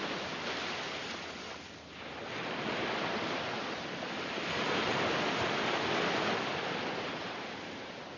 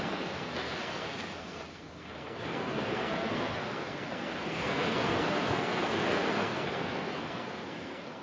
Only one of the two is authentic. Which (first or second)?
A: first